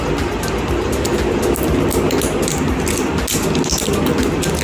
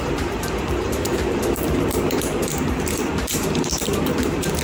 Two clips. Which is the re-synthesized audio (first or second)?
second